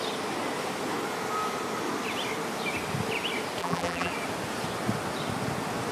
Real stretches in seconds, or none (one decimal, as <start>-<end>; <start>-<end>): 0.0-3.6; 4.1-5.9